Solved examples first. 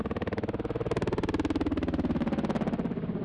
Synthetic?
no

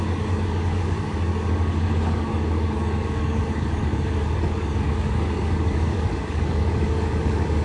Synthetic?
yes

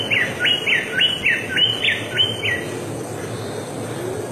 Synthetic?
no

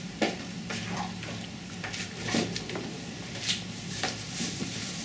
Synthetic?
yes